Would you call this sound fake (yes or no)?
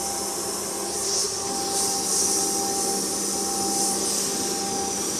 no